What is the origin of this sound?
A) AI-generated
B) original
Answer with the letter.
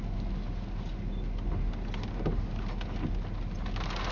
B